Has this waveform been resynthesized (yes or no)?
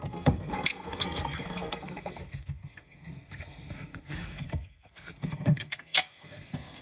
yes